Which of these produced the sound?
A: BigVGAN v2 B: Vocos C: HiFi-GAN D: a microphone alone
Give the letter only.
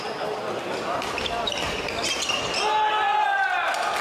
D